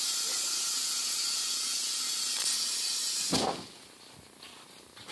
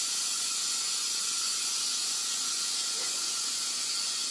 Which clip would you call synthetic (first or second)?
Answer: second